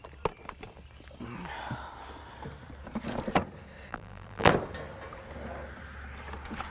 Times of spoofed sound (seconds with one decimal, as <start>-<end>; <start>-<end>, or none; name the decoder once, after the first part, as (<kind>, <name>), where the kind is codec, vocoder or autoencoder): 3.9-4.5 (vocoder, BigVGAN v2)